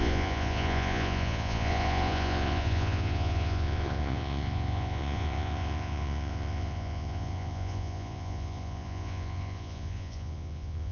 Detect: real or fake fake